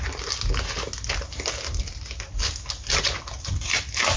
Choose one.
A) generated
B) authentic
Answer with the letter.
B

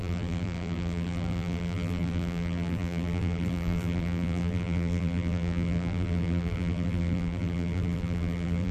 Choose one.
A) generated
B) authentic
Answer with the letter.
A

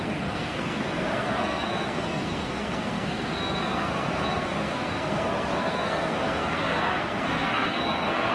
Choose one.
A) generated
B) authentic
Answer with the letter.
A